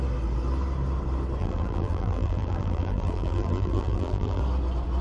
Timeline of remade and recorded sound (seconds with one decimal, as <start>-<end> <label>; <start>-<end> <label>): 0.0-1.4 recorded; 1.4-4.4 remade; 4.4-5.0 recorded